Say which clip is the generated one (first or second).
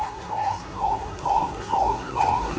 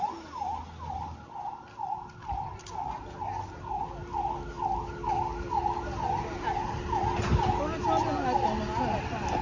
first